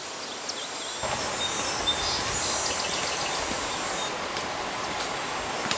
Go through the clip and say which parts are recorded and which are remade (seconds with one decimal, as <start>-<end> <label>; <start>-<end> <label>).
0.0-5.8 recorded